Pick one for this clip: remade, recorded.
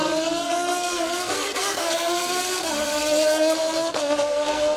remade